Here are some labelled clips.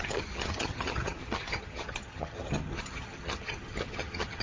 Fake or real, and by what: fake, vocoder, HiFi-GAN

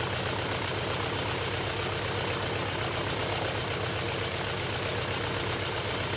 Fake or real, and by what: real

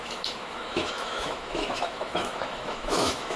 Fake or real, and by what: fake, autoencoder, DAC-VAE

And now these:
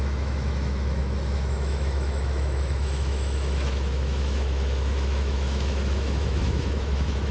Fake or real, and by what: fake, autoencoder, DAC-VAE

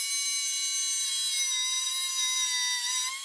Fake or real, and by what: real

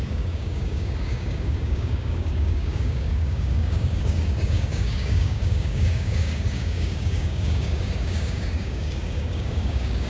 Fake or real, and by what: fake, codec, DAC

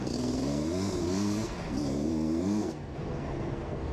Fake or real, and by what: fake, codec, SNAC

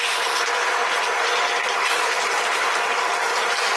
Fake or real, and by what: real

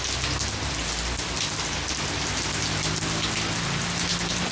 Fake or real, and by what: real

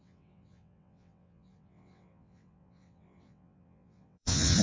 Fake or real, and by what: fake, vocoder, WaveNeXt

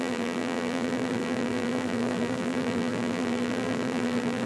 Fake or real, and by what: fake, vocoder, BigVGAN v2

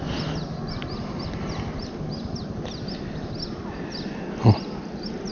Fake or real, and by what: real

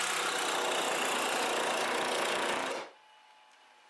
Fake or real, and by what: real